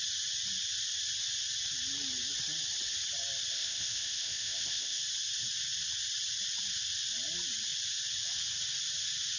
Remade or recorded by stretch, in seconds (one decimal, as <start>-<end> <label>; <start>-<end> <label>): 0.0-3.5 recorded; 3.5-5.0 remade; 5.0-9.4 recorded